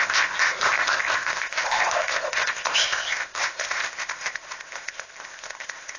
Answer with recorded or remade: remade